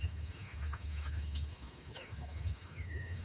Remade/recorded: remade